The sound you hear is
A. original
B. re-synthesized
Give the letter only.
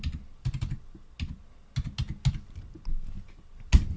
A